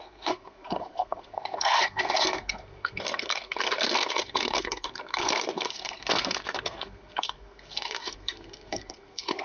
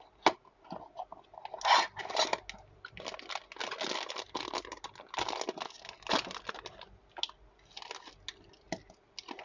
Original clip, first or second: second